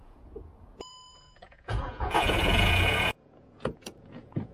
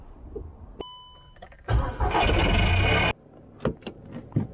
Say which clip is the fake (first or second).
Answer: first